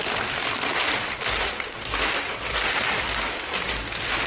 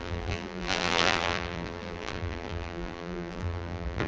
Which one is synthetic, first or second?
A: second